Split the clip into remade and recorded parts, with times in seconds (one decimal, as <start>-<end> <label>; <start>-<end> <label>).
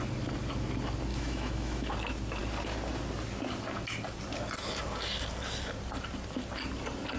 0.0-1.1 recorded; 1.1-1.9 remade; 1.9-7.2 recorded